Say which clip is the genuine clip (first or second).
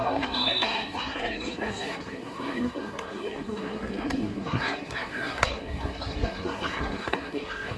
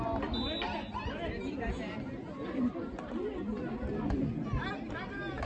second